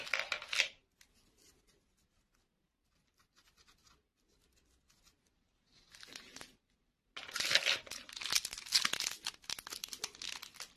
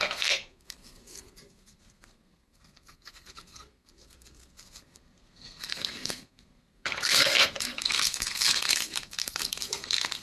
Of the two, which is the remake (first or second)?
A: second